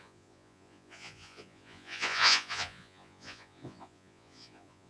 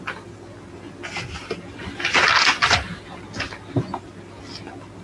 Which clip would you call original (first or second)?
second